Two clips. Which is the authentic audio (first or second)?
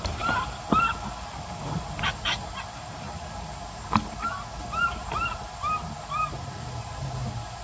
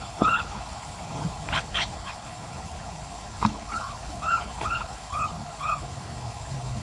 first